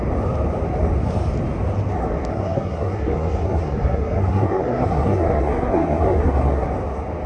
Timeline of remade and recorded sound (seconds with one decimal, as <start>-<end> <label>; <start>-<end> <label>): 0.0-2.3 recorded; 2.3-6.7 remade; 6.7-7.3 recorded